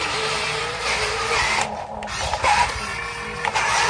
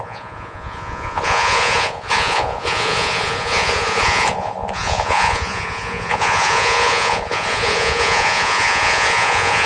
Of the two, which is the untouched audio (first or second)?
first